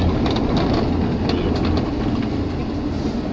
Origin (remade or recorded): recorded